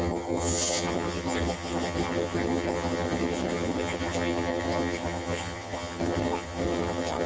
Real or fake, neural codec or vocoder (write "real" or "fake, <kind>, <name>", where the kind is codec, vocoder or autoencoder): fake, vocoder, HiFi-GAN